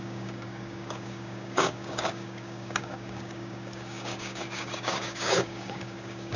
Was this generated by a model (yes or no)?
yes